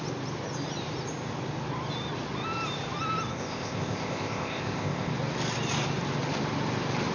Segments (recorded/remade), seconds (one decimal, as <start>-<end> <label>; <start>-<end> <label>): 0.0-3.3 recorded; 3.3-5.1 remade; 5.1-7.1 recorded